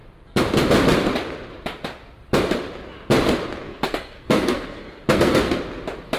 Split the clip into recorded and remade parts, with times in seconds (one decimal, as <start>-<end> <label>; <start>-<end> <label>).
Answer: 0.0-3.7 recorded; 3.7-5.6 remade; 5.6-6.2 recorded